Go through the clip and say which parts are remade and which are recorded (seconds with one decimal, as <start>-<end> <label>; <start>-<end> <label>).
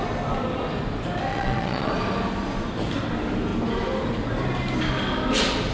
0.0-1.3 recorded; 1.3-1.9 remade; 1.9-5.7 recorded